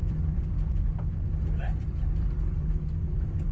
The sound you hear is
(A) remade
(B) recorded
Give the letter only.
A